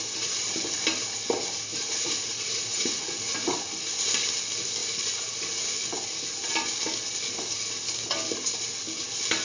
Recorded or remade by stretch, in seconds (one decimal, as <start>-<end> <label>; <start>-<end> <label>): 0.0-1.7 recorded; 1.7-3.5 remade; 3.5-9.4 recorded